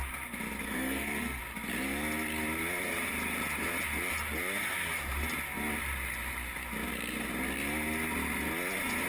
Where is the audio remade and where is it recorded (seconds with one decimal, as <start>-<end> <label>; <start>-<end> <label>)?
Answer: 0.0-0.6 recorded; 0.6-1.4 remade; 1.4-9.1 recorded